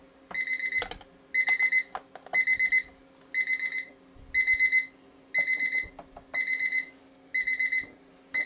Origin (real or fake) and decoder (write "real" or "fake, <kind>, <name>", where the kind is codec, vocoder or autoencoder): real